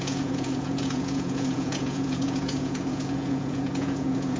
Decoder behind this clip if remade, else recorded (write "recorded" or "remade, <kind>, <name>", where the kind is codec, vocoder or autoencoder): remade, vocoder, Vocos